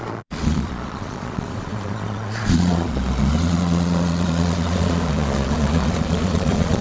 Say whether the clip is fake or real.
fake